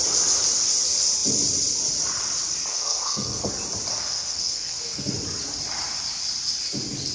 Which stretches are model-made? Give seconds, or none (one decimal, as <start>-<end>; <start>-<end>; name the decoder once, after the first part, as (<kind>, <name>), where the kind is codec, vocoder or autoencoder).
2.7-3.5 (codec, SNAC); 3.9-5.1